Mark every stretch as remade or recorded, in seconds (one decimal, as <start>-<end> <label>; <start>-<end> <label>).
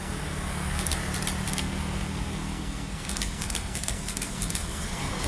0.0-1.0 remade; 1.0-1.5 recorded; 1.5-5.3 remade